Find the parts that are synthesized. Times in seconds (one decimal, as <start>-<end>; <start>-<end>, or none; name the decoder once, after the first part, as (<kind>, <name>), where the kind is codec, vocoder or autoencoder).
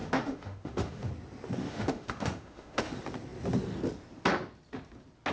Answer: 0.0-1.1 (autoencoder, DAC-VAE); 1.6-2.9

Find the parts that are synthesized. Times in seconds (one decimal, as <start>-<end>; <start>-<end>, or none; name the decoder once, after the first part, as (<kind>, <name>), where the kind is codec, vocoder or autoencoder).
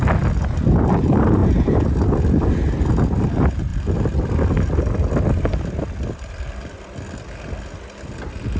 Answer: none